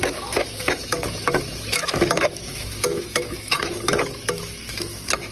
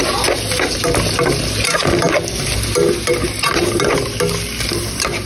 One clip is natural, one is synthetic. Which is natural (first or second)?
second